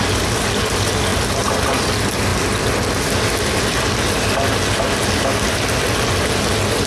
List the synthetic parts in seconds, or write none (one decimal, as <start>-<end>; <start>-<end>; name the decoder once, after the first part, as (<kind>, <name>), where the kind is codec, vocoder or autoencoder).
none

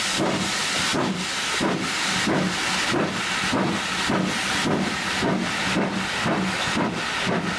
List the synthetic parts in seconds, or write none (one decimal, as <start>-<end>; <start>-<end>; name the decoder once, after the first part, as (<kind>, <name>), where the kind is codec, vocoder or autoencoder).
none

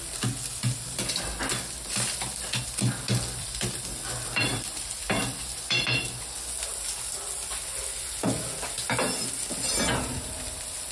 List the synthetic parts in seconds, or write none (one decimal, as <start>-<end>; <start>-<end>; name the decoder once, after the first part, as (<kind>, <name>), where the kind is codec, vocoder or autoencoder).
3.4-5.7 (vocoder, BigVGAN v2)

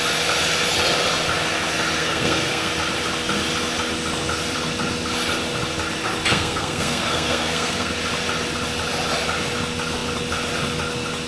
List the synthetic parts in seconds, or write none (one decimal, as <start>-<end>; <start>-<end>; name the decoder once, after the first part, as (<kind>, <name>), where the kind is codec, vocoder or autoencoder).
2.0-2.7 (codec, SNAC); 6.3-7.9